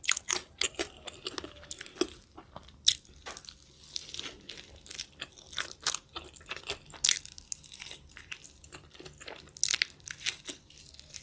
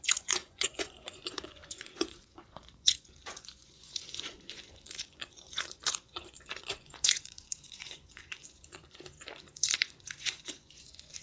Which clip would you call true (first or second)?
first